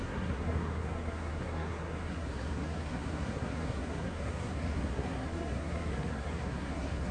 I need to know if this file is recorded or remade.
remade